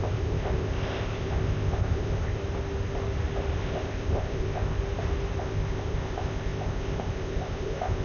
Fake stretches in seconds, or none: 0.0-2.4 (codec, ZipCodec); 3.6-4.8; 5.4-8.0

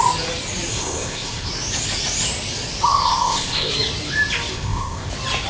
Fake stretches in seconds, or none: 0.7-1.5 (codec, ZipCodec); 2.9-3.7; 4.5-5.1